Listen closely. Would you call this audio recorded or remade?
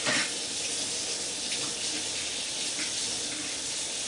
recorded